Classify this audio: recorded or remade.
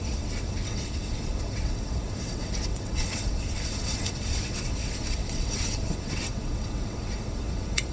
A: remade